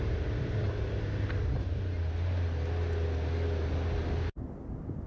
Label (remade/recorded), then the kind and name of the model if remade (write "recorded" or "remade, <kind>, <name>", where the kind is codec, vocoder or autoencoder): recorded